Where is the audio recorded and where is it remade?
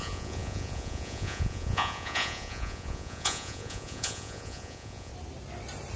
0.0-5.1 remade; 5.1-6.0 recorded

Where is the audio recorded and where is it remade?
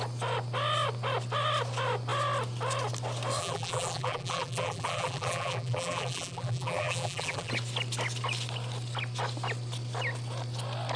0.0-3.4 recorded; 3.4-7.5 remade; 7.5-11.0 recorded